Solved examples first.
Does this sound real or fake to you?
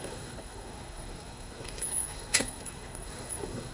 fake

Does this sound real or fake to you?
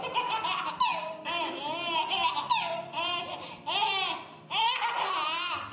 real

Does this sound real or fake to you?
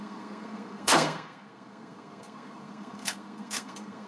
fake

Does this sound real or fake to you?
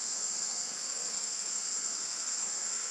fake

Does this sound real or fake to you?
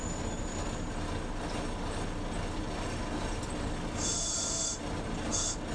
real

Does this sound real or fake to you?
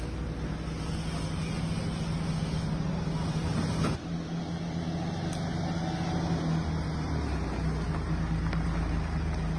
real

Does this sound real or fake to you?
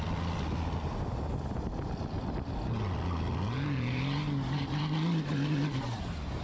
real